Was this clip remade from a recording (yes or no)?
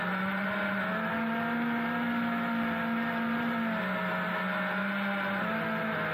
no